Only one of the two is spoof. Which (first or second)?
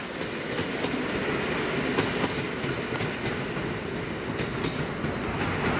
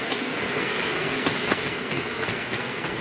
second